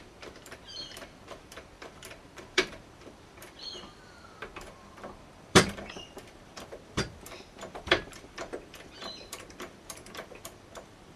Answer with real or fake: fake